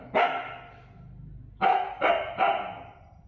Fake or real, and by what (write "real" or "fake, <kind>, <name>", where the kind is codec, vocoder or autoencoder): real